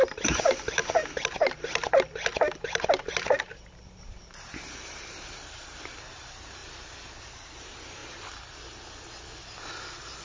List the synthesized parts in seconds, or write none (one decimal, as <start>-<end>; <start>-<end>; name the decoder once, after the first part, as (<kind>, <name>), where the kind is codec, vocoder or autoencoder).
0.0-0.8 (vocoder, BigVGAN v2); 4.0-6.6; 7.3-8.0